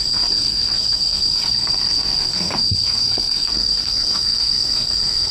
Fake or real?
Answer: fake